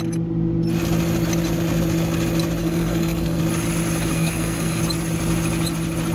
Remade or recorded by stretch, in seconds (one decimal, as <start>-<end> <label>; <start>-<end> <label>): 0.0-2.6 recorded; 2.6-3.4 remade; 3.4-4.1 recorded; 4.1-4.8 remade; 4.8-6.1 recorded